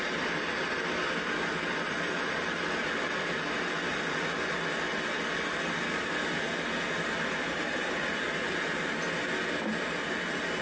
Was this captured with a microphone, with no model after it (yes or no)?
yes